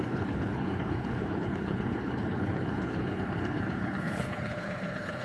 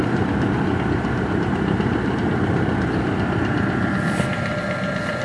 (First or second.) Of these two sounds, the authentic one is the second